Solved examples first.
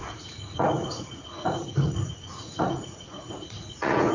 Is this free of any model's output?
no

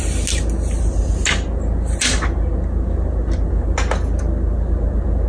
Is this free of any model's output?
yes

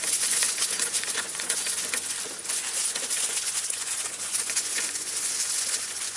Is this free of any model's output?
no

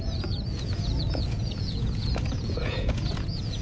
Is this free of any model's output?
no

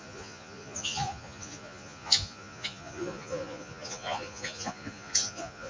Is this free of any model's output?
no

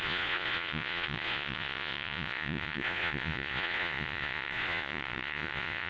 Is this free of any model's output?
no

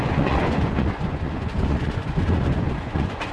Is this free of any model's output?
no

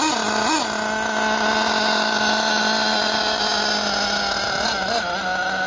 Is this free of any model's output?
yes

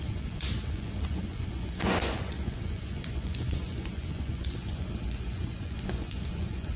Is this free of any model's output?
no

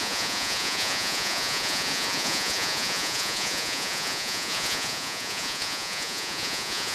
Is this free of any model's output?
no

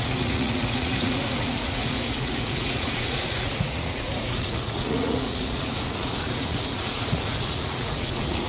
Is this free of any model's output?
no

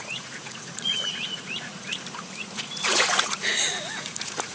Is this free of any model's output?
no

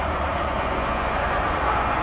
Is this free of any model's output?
no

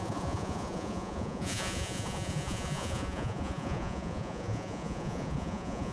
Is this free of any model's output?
no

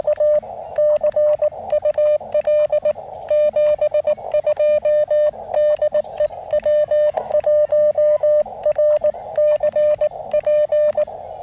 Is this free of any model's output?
yes